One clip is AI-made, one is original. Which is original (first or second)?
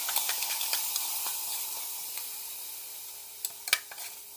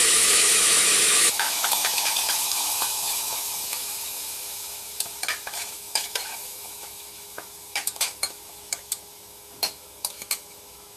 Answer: first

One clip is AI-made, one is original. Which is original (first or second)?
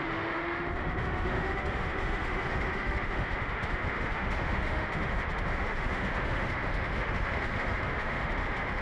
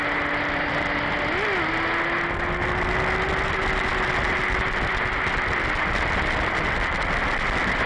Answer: second